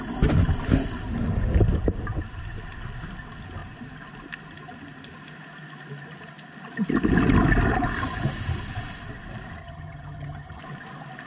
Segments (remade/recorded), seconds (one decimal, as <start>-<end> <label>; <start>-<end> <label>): 0.0-9.6 recorded; 9.6-10.6 remade; 10.6-11.3 recorded